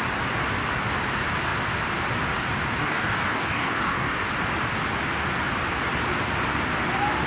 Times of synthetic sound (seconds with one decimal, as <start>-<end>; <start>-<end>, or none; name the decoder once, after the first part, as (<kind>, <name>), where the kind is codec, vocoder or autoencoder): 2.8-4.3 (codec, DAC)